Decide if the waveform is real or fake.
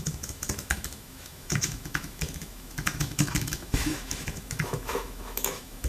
fake